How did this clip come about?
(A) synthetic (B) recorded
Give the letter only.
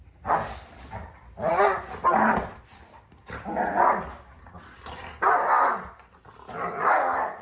B